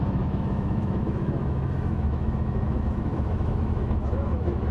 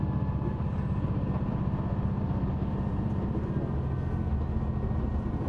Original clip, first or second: second